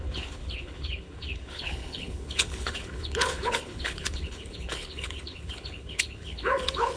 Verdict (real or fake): fake